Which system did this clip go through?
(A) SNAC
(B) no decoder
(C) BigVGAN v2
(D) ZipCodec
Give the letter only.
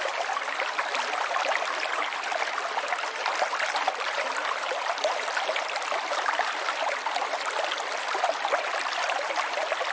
B